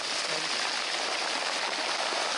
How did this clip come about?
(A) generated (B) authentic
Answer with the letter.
B